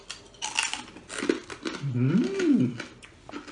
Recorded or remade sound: recorded